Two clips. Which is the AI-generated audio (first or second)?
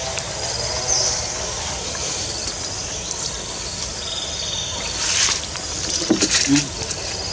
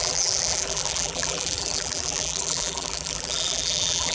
second